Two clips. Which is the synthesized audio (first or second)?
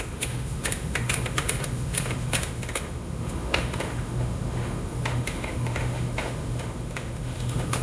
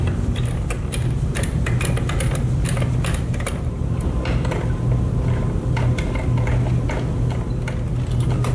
first